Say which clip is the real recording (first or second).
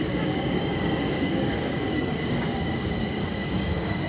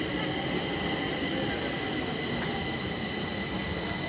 second